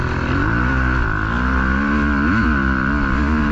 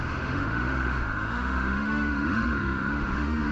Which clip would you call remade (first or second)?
second